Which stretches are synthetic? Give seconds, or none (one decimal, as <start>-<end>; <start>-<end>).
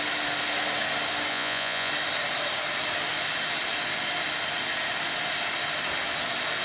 1.3-1.9